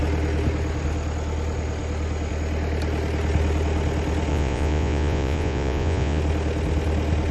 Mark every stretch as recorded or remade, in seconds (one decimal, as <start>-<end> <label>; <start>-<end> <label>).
0.0-4.3 recorded; 4.3-6.2 remade; 6.2-7.3 recorded

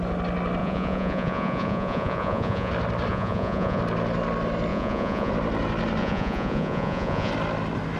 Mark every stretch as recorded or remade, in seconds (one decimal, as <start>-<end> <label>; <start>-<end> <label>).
0.0-0.6 recorded; 0.6-2.7 remade; 2.7-3.1 recorded; 3.1-3.8 remade; 3.8-4.7 recorded; 4.7-5.3 remade; 5.3-6.0 recorded; 6.0-7.3 remade; 7.3-8.0 recorded

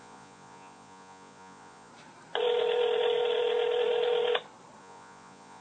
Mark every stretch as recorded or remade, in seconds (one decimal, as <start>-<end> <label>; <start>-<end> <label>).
0.0-1.9 remade; 1.9-4.8 recorded; 4.8-5.6 remade

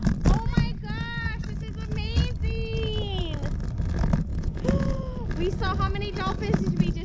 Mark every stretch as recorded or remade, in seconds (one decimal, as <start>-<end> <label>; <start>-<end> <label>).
0.0-4.3 recorded; 4.3-5.2 remade; 5.2-7.0 recorded

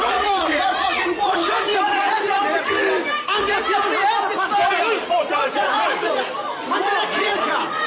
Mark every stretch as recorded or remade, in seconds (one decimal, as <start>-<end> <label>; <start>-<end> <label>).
0.0-2.5 remade; 2.5-5.1 recorded; 5.1-6.3 remade; 6.3-7.2 recorded; 7.2-7.9 remade

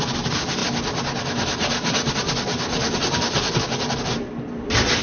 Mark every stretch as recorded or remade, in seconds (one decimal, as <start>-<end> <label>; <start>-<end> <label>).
0.0-5.0 recorded

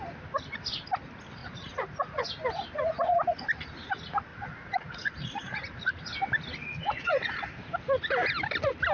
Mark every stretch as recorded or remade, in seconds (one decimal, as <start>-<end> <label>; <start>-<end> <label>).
0.0-1.4 recorded; 1.4-2.3 remade; 2.3-4.3 recorded; 4.3-6.0 remade; 6.0-6.8 recorded; 6.8-7.4 remade; 7.4-8.9 recorded

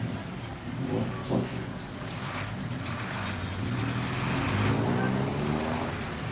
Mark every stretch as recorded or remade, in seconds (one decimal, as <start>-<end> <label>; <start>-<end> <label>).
0.0-1.2 recorded; 1.2-1.7 remade; 1.7-3.2 recorded; 3.2-3.8 remade; 3.8-6.3 recorded